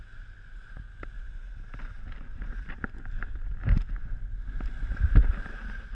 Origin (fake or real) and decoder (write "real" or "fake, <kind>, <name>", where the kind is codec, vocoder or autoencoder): real